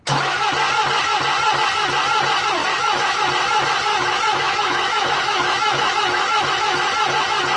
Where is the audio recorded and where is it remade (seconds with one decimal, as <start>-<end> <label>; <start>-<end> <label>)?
0.0-2.6 recorded; 2.6-3.2 remade; 3.2-3.9 recorded; 3.9-6.5 remade; 6.5-7.6 recorded

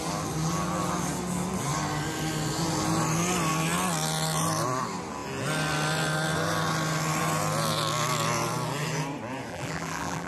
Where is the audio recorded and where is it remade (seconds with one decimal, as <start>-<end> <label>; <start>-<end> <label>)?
0.0-9.5 recorded; 9.5-10.3 remade

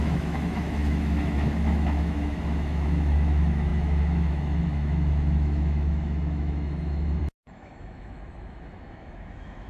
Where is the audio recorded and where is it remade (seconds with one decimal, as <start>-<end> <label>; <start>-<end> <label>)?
0.0-9.7 remade

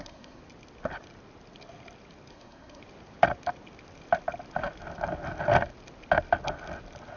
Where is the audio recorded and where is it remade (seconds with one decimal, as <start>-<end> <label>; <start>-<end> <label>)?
0.0-0.4 remade; 0.4-2.3 recorded; 2.3-2.8 remade; 2.8-7.2 recorded

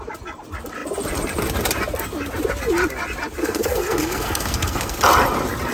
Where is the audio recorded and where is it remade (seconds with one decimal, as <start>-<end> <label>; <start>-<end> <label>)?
0.0-3.4 recorded; 3.4-5.0 remade; 5.0-5.7 recorded

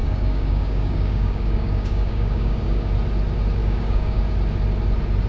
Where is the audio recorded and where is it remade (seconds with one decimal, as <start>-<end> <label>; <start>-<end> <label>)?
0.0-2.9 remade; 2.9-3.6 recorded; 3.6-4.2 remade; 4.2-5.3 recorded

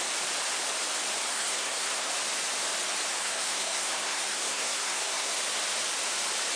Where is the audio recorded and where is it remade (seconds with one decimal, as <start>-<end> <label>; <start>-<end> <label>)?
0.0-1.3 recorded; 1.3-2.1 remade; 2.1-3.2 recorded; 3.2-5.3 remade; 5.3-6.6 recorded